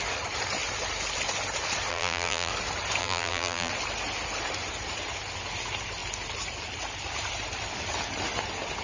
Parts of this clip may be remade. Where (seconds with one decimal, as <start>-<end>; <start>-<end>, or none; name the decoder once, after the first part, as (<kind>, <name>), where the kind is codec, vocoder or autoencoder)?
1.9-2.5 (vocoder, BigVGAN v2); 3.0-3.7